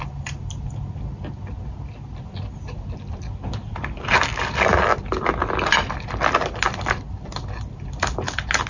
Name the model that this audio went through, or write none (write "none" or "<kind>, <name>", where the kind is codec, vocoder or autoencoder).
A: none